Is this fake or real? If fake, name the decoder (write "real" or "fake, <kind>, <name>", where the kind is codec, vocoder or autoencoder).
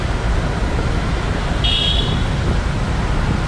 real